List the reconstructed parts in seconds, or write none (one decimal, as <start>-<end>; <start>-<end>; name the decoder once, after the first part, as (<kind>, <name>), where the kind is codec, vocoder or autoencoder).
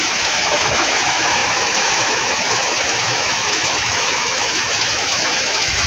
0.0-5.9 (autoencoder, DAC-VAE)